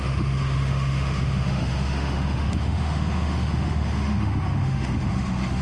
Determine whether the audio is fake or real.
fake